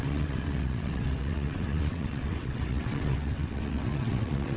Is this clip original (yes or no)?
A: no